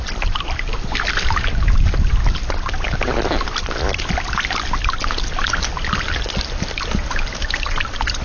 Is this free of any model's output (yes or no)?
yes